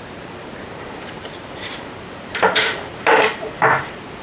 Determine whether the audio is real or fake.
fake